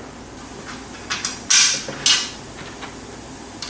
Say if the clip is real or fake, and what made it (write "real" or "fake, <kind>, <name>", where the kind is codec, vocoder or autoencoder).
real